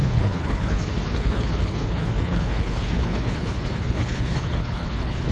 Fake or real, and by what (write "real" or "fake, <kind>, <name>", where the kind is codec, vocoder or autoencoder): fake, codec, HILCodec